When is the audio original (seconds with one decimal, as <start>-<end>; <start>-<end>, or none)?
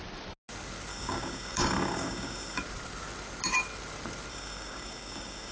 0.0-0.9; 2.6-4.3